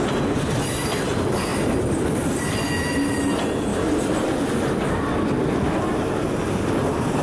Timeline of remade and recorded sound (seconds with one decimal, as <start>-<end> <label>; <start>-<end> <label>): 0.0-7.2 recorded